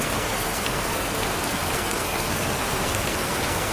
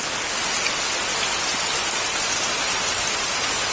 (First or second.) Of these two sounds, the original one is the second